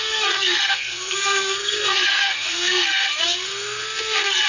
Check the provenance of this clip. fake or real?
fake